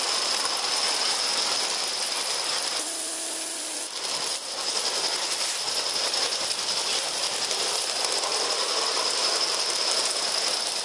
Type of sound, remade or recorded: recorded